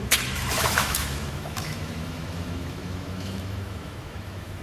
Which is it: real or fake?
fake